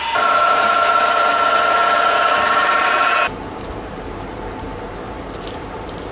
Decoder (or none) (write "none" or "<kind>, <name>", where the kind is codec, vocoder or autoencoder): vocoder, BigVGAN v2